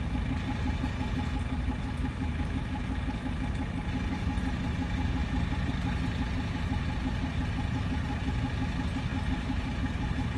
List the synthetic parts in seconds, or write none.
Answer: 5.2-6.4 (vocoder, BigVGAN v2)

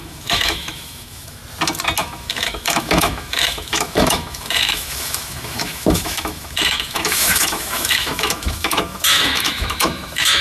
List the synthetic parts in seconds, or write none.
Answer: 0.0-1.4 (autoencoder, DAC-VAE); 2.0-10.4